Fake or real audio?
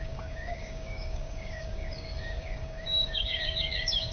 fake